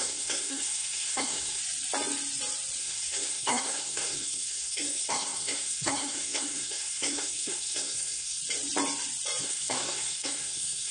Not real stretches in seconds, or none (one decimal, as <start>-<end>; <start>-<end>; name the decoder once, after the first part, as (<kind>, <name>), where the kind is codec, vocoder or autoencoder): 0.0-1.6 (codec, SNAC); 2.8-8.4; 9.4-10.9

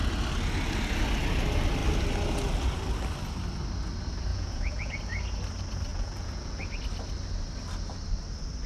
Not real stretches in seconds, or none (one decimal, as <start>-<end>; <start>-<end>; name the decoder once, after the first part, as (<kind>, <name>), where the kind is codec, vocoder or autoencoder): 4.3-4.9 (vocoder, Vocos); 5.9-6.6

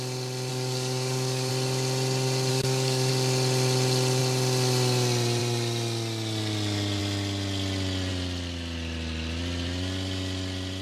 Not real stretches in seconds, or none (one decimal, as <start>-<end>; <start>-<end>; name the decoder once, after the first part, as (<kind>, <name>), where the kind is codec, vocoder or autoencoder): 0.5-1.5 (codec, DAC); 2.5-3.1